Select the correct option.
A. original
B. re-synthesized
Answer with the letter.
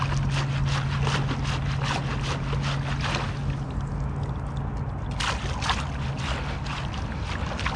A